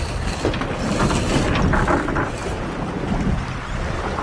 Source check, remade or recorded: recorded